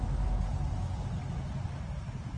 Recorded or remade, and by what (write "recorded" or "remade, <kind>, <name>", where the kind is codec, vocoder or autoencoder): recorded